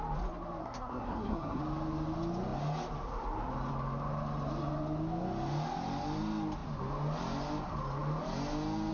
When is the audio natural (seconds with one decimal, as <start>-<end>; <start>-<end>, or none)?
0.0-0.6; 1.6-8.9